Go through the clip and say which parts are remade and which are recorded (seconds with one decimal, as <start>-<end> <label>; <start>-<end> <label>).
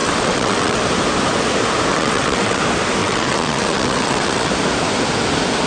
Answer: 0.0-0.8 remade; 0.8-1.9 recorded; 1.9-2.6 remade; 2.6-3.0 recorded; 3.0-4.5 remade; 4.5-5.7 recorded